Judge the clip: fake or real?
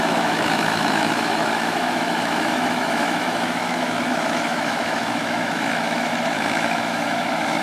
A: fake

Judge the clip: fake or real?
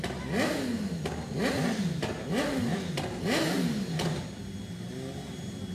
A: real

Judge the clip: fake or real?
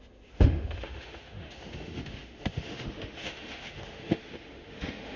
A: fake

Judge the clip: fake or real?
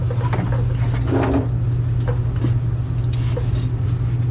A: real